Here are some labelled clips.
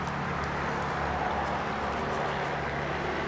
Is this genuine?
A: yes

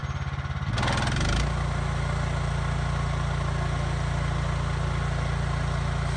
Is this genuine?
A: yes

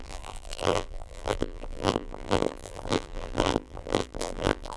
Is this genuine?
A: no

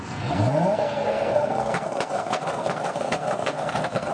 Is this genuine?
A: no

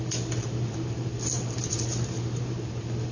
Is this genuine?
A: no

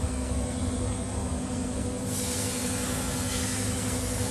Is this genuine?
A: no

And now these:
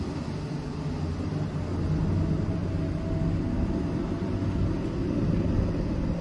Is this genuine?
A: yes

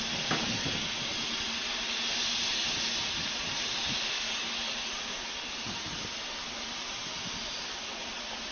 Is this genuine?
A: yes